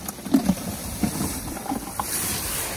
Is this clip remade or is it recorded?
remade